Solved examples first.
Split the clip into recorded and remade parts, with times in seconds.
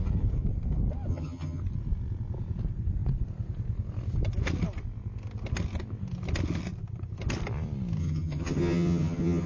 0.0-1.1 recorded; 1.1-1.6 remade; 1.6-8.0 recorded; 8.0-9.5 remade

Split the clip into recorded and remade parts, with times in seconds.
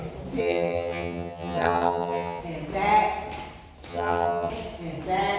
0.0-0.4 recorded; 0.4-2.4 remade; 2.4-3.9 recorded; 3.9-4.5 remade; 4.5-5.4 recorded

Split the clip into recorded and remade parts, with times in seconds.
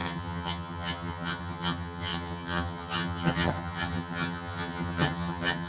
0.0-5.7 remade